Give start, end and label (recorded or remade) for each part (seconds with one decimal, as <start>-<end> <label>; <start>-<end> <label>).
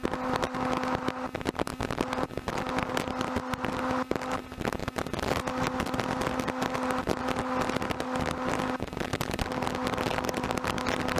0.0-11.2 recorded